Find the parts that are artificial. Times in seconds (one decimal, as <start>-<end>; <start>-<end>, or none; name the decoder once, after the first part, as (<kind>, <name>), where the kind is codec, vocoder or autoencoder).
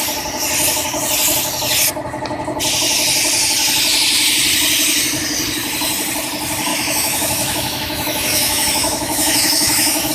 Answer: 6.7-10.1 (autoencoder, DAC-VAE)